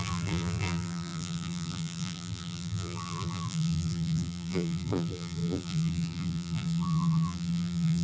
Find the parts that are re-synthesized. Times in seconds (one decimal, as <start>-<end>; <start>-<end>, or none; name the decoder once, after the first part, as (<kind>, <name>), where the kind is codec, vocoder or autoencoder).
0.0-8.0 (vocoder, BigVGAN v2)